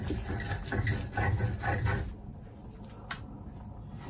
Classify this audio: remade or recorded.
recorded